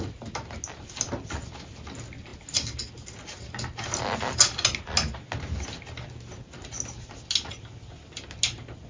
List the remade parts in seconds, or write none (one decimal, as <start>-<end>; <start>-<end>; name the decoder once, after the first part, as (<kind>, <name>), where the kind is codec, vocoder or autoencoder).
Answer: none